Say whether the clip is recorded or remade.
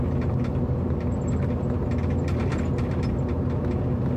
recorded